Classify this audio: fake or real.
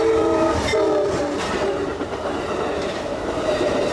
fake